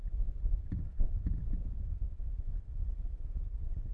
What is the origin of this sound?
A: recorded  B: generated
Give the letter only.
A